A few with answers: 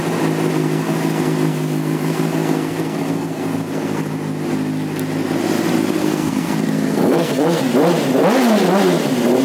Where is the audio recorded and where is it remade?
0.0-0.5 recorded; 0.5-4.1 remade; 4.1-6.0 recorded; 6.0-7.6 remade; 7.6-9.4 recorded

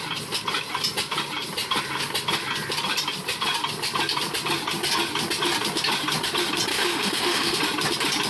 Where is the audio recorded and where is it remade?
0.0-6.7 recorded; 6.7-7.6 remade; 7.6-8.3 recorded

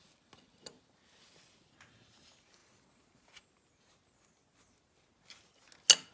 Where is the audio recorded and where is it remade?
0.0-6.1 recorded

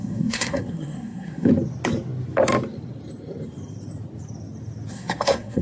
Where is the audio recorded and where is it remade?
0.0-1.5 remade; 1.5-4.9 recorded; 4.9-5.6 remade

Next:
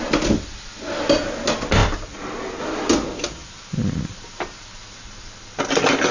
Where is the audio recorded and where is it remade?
0.0-6.1 recorded

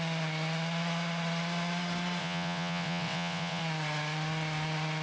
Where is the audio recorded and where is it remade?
0.0-2.2 recorded; 2.2-3.6 remade; 3.6-5.0 recorded